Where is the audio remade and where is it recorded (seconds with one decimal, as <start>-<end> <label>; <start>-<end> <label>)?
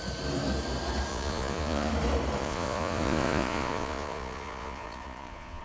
0.0-1.1 recorded; 1.1-1.9 remade; 1.9-2.4 recorded; 2.4-5.6 remade